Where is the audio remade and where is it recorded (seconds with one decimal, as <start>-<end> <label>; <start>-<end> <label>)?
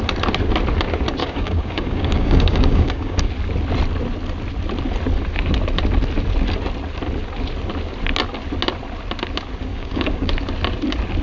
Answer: 0.0-1.2 recorded; 1.2-3.3 remade; 3.3-9.7 recorded; 9.7-10.3 remade; 10.3-11.2 recorded